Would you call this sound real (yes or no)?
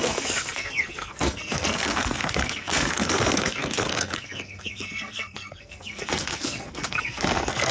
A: no